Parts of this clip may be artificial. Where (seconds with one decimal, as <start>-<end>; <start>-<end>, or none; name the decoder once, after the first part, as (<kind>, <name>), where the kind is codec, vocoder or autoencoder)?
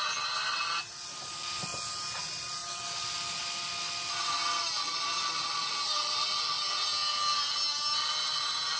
none